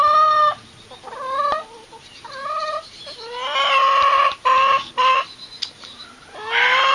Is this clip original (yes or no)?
yes